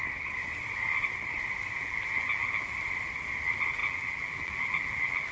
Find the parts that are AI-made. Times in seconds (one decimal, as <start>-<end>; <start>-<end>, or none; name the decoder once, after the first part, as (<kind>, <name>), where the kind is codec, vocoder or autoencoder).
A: 1.8-2.7 (vocoder, BigVGAN v2); 3.8-5.3